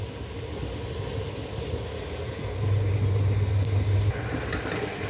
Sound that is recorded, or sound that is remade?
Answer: recorded